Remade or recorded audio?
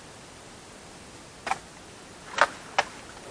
recorded